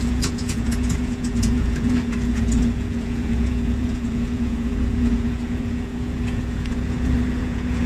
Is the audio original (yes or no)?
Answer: no